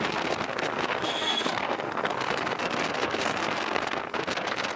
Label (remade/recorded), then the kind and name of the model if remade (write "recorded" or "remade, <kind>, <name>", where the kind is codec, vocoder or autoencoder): remade, codec, SNAC